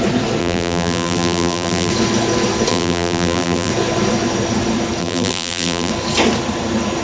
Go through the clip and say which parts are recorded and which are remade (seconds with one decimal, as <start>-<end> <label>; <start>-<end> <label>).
0.0-0.4 recorded; 0.4-1.9 remade; 1.9-2.7 recorded; 2.7-3.7 remade; 3.7-5.0 recorded; 5.0-5.9 remade; 5.9-7.0 recorded